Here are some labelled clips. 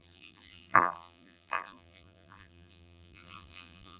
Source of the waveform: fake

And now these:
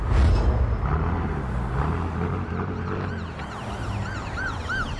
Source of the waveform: real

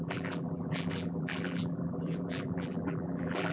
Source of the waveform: fake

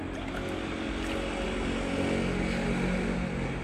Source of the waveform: real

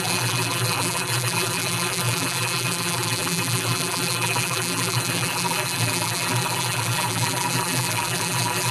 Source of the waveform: fake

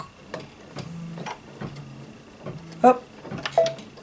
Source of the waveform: real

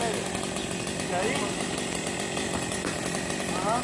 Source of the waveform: real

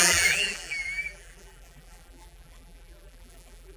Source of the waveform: fake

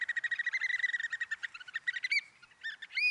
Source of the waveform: real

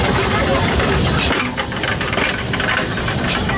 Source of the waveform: real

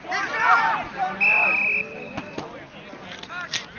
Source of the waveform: real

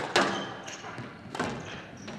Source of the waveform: real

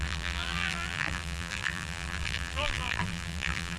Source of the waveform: fake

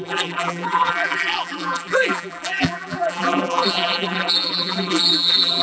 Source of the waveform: fake